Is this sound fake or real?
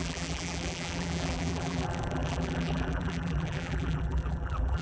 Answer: fake